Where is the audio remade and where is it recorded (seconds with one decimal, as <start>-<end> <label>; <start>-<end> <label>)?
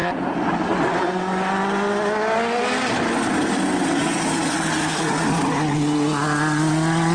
0.0-7.1 recorded